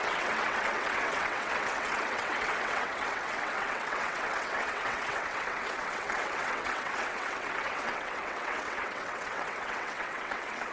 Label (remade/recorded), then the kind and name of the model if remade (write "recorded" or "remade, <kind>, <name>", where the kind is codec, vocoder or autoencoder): remade, vocoder, WaveNeXt